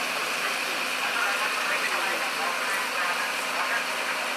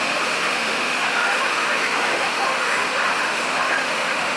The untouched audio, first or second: first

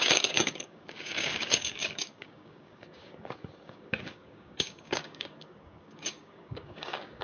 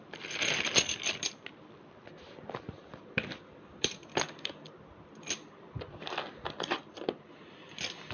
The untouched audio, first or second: second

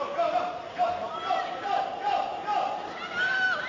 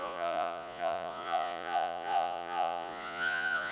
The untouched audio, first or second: first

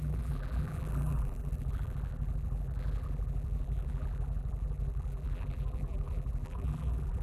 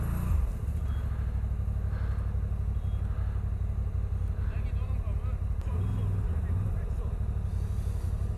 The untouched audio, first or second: second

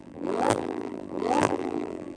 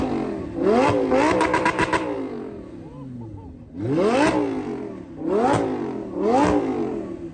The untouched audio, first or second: second